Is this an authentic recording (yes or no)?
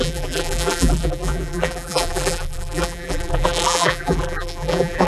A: no